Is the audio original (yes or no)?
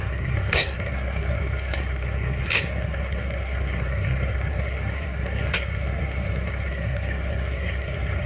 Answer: no